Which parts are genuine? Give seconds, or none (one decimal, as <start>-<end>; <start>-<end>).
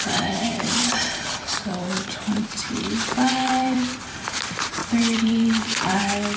0.0-0.5; 4.3-4.8; 6.0-6.4